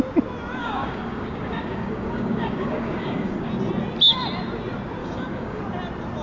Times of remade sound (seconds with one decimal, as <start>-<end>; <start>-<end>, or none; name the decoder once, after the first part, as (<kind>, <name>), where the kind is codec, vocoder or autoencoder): 0.6-3.5 (codec, DAC); 5.0-5.6